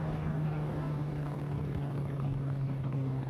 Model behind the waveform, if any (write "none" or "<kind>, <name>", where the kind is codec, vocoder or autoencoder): codec, DAC